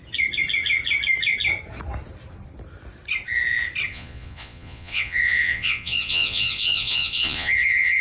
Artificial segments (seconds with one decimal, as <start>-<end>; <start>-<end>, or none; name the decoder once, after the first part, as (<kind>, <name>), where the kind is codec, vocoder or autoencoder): 3.9-8.0 (vocoder, Vocos)